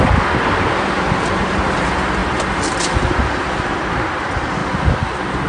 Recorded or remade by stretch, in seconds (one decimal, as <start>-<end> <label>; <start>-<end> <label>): 0.0-5.5 recorded